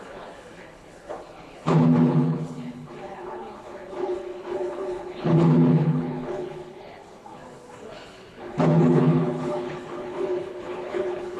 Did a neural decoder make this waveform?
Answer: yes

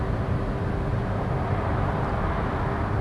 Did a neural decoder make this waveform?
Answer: yes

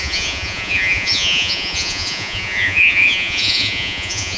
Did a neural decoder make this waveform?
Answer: yes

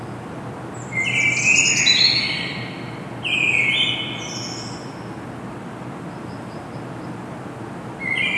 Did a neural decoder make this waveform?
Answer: no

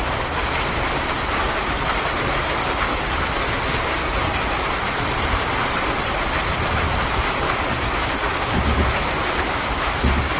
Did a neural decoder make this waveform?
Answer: no